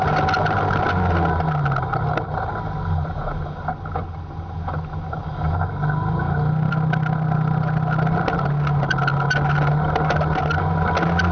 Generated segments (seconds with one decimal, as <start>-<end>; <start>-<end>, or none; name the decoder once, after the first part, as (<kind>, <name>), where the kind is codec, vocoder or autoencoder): none